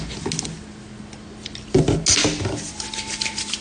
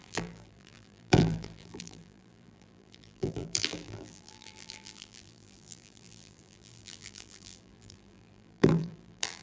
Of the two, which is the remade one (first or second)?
second